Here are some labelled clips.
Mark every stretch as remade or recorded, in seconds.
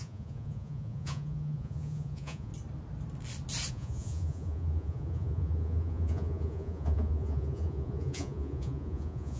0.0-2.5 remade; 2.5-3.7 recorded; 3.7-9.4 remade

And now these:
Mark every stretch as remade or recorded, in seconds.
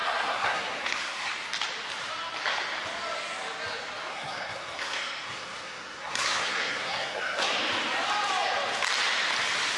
0.0-1.3 remade; 1.3-4.1 recorded; 4.1-7.6 remade; 7.6-9.8 recorded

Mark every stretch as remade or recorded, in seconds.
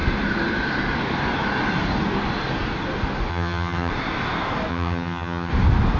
0.0-3.3 recorded; 3.3-3.9 remade; 3.9-4.7 recorded; 4.7-5.5 remade; 5.5-6.0 recorded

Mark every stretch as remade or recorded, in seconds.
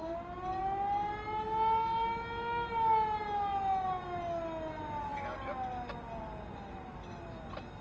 0.0-7.8 recorded